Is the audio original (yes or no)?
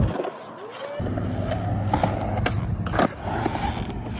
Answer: yes